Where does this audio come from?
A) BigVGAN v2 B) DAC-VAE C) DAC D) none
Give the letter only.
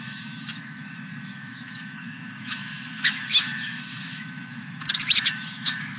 B